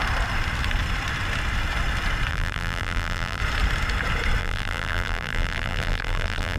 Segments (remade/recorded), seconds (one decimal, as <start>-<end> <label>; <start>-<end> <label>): 0.0-2.3 recorded; 2.3-3.4 remade; 3.4-4.4 recorded; 4.4-6.6 remade